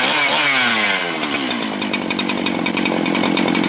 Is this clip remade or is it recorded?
recorded